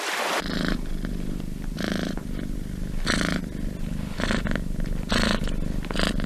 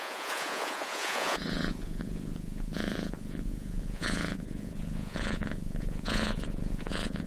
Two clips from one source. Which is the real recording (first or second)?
first